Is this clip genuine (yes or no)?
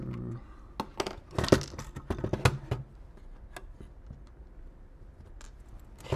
yes